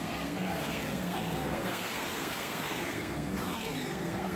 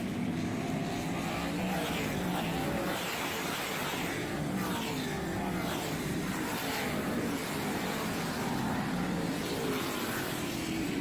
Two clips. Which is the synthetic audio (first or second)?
first